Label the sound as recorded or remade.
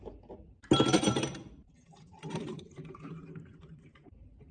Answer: recorded